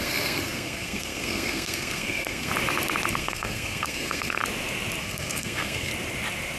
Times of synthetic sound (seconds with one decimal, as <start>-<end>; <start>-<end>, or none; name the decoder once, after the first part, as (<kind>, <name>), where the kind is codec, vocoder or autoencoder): 0.0-2.5 (codec, SNAC); 3.1-4.4; 5.0-5.9